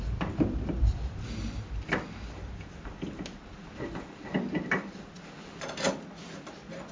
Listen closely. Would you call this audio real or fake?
real